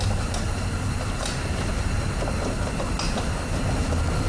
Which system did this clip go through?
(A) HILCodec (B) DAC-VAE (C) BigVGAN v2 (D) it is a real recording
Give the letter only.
D